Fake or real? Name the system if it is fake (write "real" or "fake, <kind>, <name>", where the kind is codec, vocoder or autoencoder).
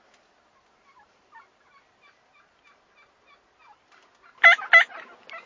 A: real